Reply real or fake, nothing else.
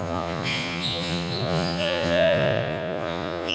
fake